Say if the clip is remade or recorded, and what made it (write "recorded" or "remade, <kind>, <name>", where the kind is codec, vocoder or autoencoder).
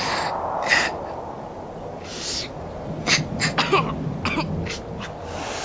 recorded